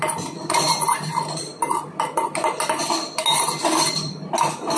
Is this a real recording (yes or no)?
yes